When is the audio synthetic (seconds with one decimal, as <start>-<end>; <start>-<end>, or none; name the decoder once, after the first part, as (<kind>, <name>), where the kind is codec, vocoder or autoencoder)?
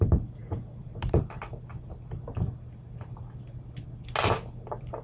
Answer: none